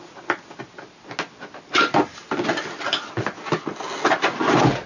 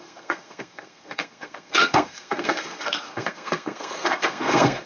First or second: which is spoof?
second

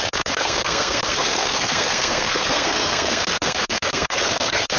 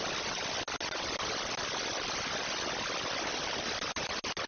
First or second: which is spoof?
first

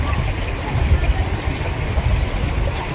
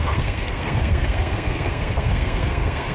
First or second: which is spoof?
second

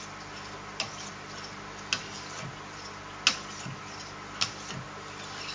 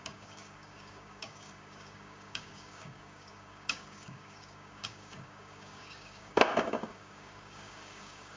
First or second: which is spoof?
second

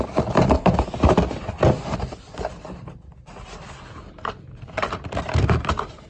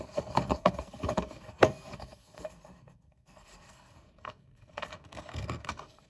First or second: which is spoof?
second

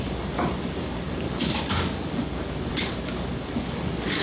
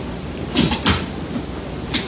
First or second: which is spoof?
first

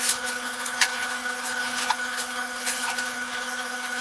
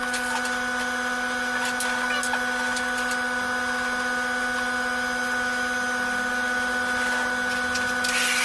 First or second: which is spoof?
first